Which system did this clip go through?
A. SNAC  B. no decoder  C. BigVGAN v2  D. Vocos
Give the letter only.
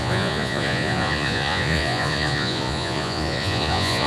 D